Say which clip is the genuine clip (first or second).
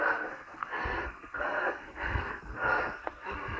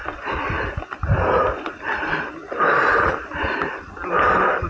second